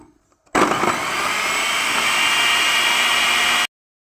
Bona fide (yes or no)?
yes